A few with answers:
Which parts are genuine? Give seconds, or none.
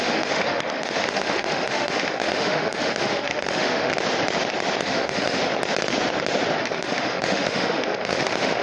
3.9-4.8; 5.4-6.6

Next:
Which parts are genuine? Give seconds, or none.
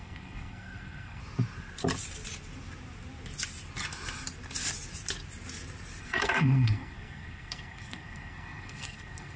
1.2-6.0